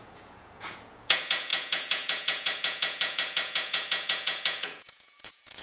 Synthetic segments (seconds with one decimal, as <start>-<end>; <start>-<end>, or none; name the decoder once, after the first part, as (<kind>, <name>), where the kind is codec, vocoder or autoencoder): 0.0-5.6 (vocoder, Vocos)